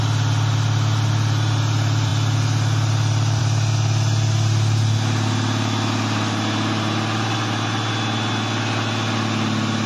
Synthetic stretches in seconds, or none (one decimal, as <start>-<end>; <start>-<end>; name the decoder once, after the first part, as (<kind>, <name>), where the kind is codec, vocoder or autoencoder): none